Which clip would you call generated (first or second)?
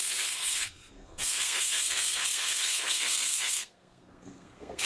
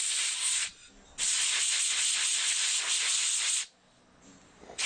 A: first